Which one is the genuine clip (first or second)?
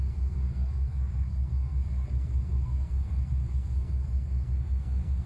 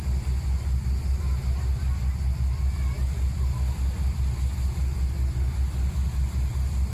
second